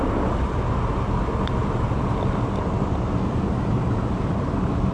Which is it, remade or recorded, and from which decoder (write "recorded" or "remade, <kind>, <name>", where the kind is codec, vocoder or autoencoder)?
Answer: recorded